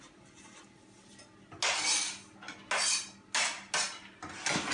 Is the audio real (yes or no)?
yes